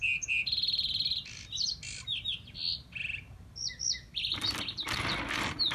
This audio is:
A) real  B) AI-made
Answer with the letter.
A